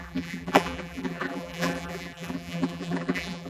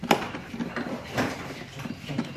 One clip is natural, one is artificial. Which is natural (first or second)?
second